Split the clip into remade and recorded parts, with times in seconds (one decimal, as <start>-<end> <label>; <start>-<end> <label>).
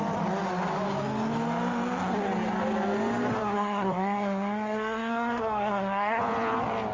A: 0.0-3.4 recorded; 3.4-6.2 remade; 6.2-6.9 recorded